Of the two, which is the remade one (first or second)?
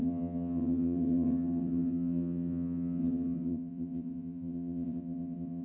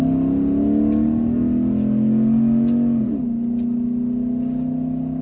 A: first